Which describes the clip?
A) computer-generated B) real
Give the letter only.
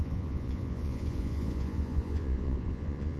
A